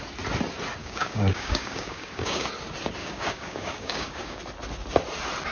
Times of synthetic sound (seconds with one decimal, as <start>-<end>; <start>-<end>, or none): 0.8-2.5; 3.0-4.4